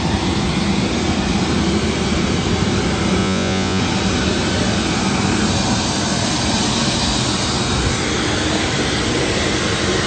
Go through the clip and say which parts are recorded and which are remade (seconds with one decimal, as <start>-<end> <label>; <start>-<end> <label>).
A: 0.0-3.2 recorded; 3.2-3.8 remade; 3.8-10.1 recorded